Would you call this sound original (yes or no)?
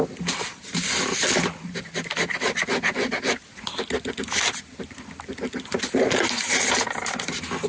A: yes